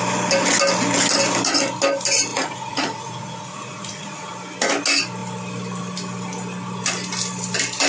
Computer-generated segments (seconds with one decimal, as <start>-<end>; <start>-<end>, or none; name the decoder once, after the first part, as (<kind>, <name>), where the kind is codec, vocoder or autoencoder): 2.3-4.3 (vocoder, Vocos)